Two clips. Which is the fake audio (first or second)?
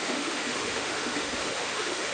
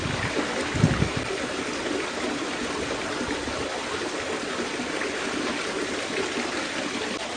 first